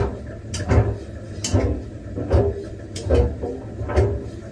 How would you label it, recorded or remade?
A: recorded